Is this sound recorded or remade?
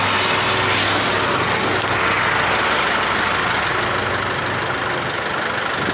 recorded